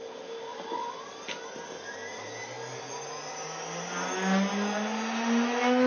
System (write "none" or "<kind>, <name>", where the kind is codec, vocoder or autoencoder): none